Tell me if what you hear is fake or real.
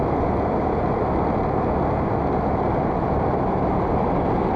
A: real